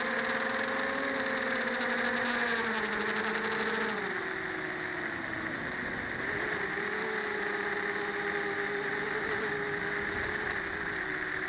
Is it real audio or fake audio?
real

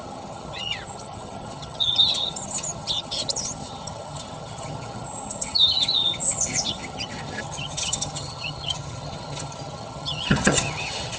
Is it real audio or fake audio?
fake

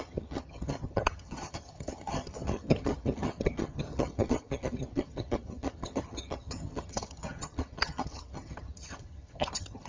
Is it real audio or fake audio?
fake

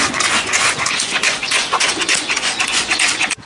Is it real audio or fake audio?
fake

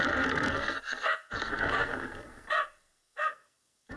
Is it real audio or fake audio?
fake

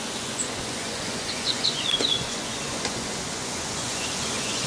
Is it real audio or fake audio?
fake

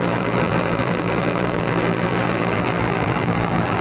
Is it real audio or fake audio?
fake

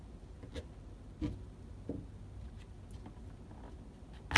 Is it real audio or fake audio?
real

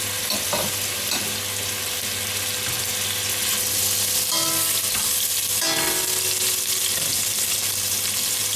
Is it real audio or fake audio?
real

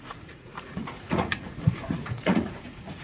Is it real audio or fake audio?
fake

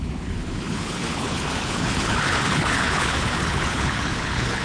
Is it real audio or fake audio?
fake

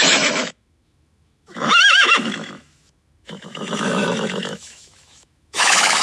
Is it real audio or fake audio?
fake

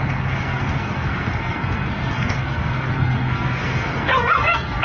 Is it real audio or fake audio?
fake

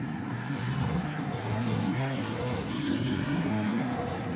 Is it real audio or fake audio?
fake